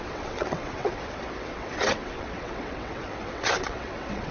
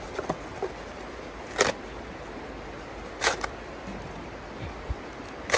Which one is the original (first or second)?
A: second